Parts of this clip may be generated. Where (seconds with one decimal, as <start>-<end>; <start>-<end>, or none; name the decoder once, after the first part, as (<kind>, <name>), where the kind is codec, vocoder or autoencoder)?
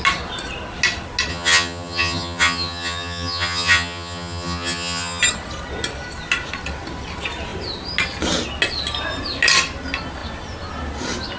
1.3-5.2 (vocoder, HiFi-GAN)